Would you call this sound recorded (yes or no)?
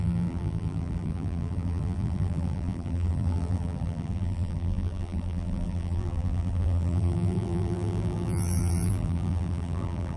no